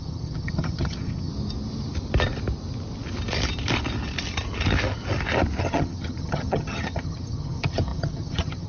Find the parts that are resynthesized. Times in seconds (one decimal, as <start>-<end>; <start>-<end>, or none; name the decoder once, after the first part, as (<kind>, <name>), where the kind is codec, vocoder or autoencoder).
0.0-1.3 (vocoder, HiFi-GAN); 5.6-8.7